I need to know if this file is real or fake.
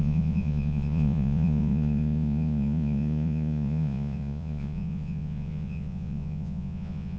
fake